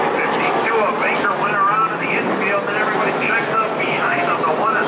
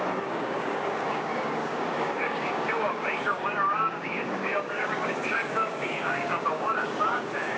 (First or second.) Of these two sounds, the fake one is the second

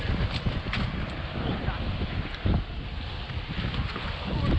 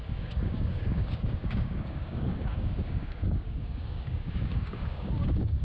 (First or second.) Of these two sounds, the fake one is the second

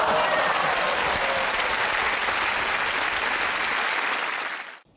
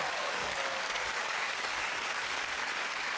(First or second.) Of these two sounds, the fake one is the second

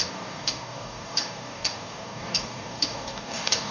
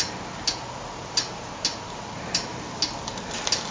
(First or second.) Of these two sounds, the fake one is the first